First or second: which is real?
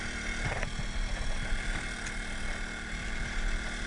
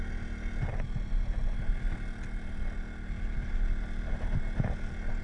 second